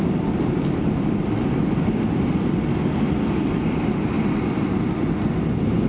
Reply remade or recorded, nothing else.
recorded